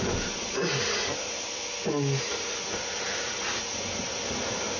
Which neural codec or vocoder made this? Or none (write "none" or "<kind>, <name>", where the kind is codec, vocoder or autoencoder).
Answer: none